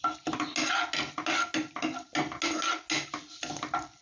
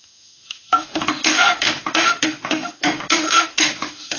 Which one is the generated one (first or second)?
second